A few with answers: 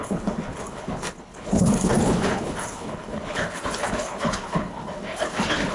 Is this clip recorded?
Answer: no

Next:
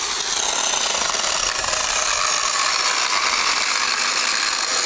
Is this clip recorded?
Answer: yes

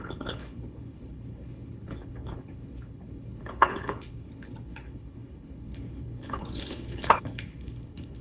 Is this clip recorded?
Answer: no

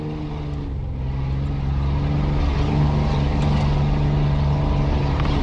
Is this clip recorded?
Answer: yes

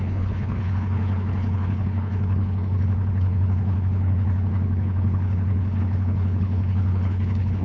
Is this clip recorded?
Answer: no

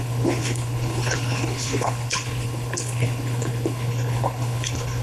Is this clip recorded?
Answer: no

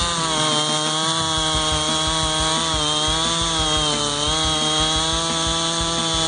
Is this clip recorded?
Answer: yes